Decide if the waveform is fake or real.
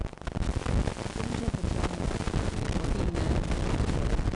real